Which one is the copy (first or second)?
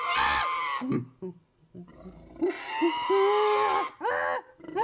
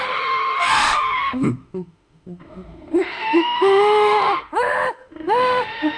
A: second